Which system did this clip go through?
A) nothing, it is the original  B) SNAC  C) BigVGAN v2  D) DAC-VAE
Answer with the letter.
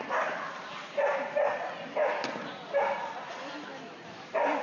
C